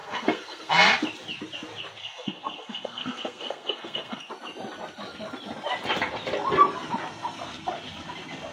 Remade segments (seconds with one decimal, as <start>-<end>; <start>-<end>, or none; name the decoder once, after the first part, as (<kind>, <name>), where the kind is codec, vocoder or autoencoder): 0.0-0.7 (codec, SNAC); 2.0-4.3